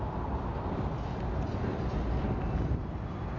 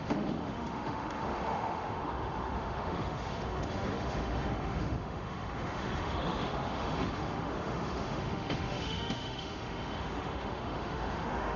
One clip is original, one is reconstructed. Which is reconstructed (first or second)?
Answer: second